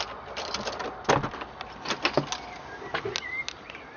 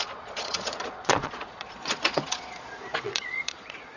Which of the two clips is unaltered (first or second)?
first